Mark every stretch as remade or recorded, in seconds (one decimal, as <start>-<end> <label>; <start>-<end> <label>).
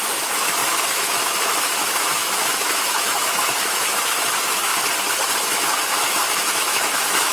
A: 0.0-4.7 remade; 4.7-5.4 recorded; 5.4-7.3 remade